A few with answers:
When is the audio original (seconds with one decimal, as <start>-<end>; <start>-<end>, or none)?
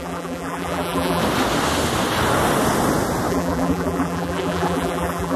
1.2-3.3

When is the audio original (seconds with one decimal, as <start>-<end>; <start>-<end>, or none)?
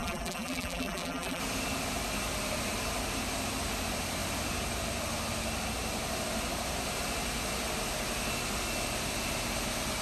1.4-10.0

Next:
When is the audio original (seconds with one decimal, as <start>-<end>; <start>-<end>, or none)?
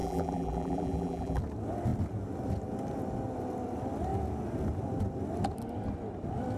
1.4-6.6